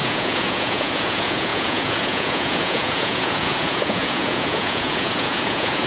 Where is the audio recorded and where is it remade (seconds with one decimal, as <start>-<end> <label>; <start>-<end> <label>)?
0.0-5.9 remade